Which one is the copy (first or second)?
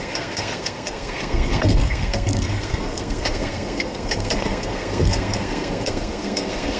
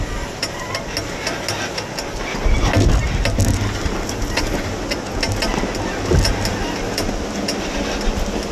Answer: first